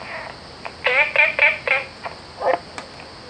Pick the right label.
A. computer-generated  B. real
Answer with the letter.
B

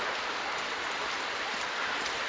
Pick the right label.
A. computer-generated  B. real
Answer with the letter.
B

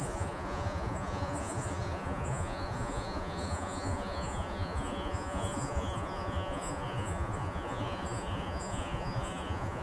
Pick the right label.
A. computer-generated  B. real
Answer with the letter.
A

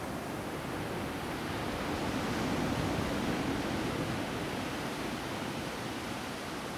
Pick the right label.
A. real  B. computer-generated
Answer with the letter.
A